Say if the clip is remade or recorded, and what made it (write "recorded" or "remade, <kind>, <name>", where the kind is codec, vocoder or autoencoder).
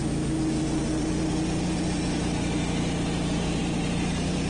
recorded